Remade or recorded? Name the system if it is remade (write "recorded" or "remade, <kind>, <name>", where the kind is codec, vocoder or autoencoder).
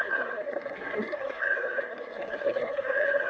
remade, codec, SNAC